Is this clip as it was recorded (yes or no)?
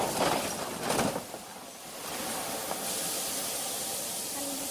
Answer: yes